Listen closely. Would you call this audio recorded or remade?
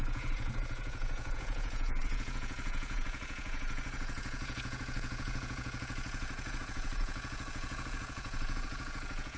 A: remade